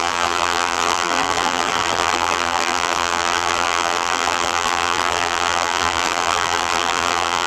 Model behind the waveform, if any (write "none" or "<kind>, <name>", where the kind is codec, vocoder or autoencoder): vocoder, BigVGAN v2